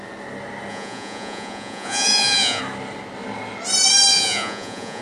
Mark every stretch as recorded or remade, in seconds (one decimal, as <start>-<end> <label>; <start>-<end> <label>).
0.0-0.7 recorded; 0.7-2.6 remade; 2.6-4.1 recorded; 4.1-5.0 remade